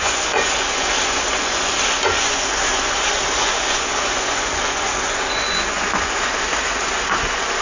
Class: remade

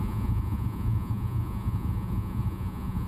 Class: remade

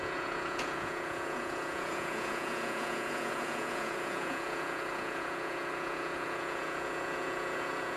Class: remade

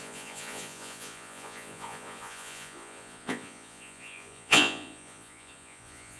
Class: remade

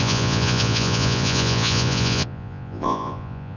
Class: remade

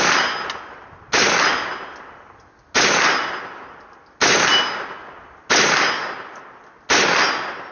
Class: recorded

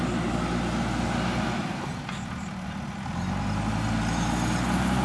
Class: recorded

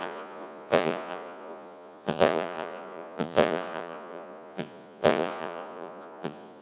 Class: remade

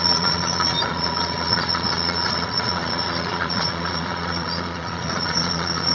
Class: remade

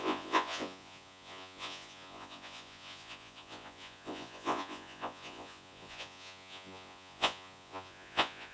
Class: remade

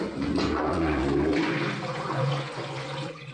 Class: remade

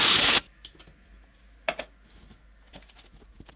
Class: recorded